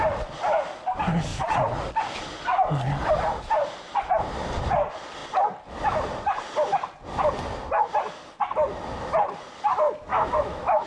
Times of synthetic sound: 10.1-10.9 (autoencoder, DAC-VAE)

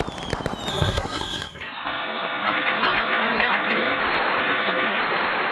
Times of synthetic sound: 0.7-4.0 (codec, SNAC); 4.4-5.0

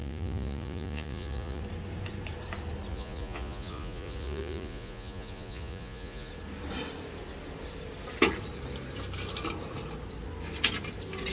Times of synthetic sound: 0.0-1.6 (vocoder, Vocos); 2.9-6.3